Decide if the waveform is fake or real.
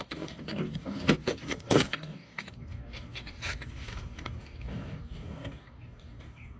fake